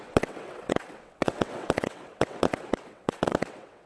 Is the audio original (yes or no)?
no